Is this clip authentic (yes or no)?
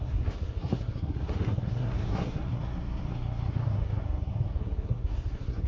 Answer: no